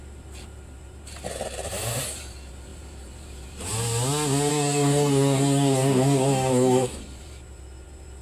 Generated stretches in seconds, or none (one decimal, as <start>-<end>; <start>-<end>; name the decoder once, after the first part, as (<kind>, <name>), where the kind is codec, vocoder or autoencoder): 4.5-7.0 (codec, DAC)